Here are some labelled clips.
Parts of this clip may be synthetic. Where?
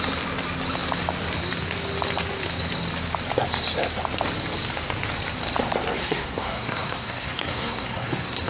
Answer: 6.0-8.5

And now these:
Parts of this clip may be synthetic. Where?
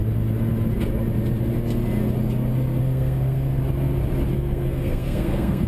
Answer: 2.8-3.6; 4.3-5.7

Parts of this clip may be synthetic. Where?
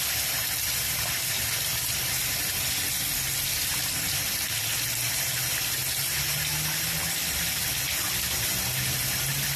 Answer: none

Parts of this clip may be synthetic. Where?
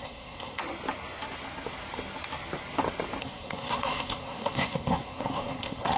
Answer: 0.0-0.6; 3.2-6.0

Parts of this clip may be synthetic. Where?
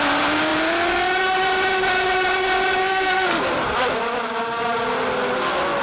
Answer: 2.8-3.4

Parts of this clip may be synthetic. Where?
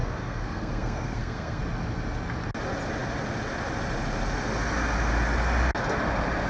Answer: 0.0-1.6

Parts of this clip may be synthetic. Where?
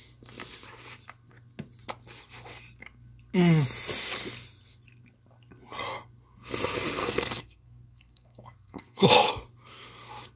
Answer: 7.0-9.3